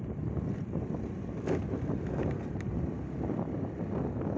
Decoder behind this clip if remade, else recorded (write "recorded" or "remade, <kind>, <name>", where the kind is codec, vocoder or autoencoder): recorded